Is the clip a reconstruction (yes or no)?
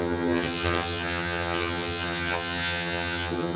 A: yes